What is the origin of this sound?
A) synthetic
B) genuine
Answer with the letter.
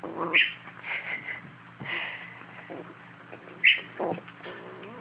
B